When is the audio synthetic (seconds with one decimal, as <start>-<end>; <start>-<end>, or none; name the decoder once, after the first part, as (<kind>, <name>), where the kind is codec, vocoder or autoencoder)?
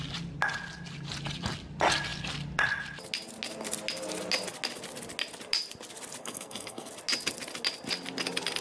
6.2-6.9 (codec, SNAC)